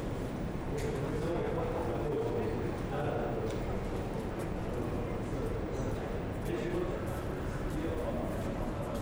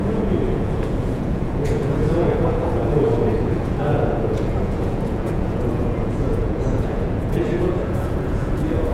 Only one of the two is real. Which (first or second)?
first